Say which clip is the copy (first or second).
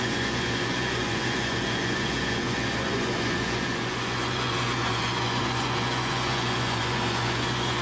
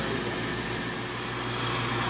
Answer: first